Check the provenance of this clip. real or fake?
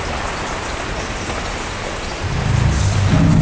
real